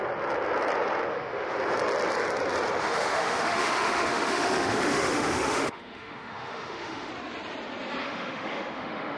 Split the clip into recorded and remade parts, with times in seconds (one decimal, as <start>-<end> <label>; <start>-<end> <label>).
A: 0.0-1.1 recorded; 1.1-1.6 remade; 1.6-2.8 recorded; 2.8-7.1 remade; 7.1-8.0 recorded; 8.0-9.2 remade